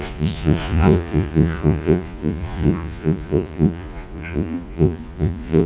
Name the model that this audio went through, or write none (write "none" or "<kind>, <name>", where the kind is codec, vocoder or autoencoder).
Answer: vocoder, Vocos